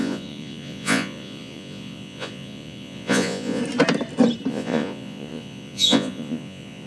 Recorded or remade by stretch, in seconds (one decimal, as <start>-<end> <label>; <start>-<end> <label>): 0.0-3.6 remade; 3.6-4.5 recorded; 4.5-6.9 remade